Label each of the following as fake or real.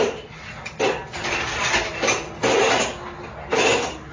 real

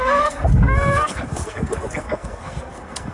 fake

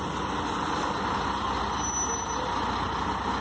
real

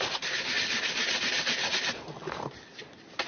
real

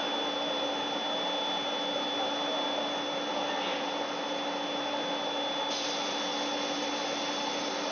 real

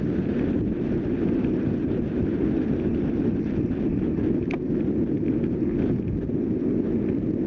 real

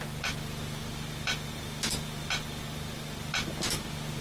real